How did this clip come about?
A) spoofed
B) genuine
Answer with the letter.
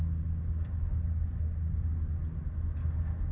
B